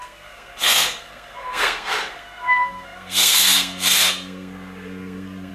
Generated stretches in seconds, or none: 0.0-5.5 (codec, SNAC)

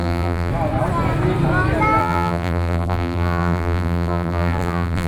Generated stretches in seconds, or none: 0.0-0.5 (vocoder, BigVGAN v2); 2.0-5.1

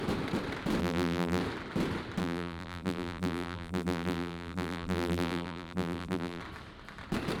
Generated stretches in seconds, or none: 0.8-1.4 (vocoder, BigVGAN v2); 2.2-6.4

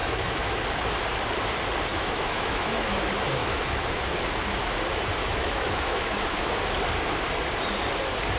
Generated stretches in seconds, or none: 0.0-0.6 (autoencoder, DAC-VAE); 1.9-3.0; 3.4-4.0; 5.2-6.5

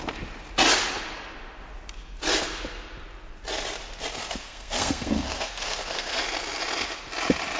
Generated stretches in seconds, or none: 4.2-6.2 (codec, SNAC)

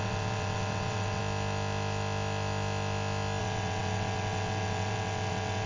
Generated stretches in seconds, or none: 0.0-1.2 (vocoder, WaveNeXt); 3.4-5.7

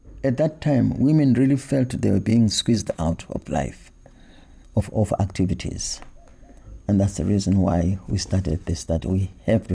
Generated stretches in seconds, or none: 2.3-4.8 (vocoder, WaveNeXt); 8.5-9.7